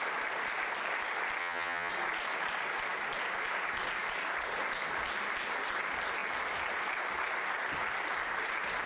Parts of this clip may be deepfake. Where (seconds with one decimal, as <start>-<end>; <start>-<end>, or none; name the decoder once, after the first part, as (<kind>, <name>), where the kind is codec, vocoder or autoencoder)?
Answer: 1.4-1.9 (vocoder, HiFi-GAN)